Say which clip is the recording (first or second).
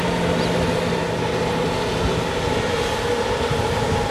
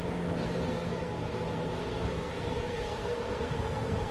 first